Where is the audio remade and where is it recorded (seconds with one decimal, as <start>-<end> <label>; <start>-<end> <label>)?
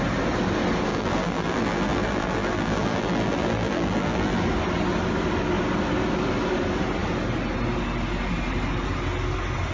0.0-0.9 recorded; 0.9-4.4 remade; 4.4-9.7 recorded